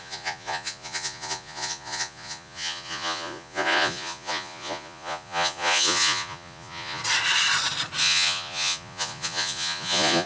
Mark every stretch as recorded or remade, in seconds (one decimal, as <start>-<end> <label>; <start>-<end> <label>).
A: 0.0-7.0 remade; 7.0-8.0 recorded; 8.0-10.3 remade